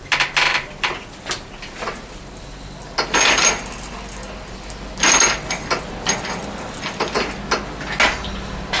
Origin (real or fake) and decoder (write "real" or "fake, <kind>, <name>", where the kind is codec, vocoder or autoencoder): real